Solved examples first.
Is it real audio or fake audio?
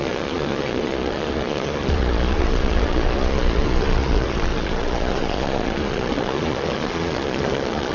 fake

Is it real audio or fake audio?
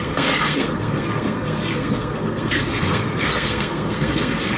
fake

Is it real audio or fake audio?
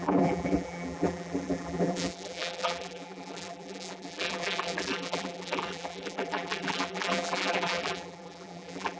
fake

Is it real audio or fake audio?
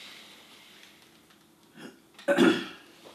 real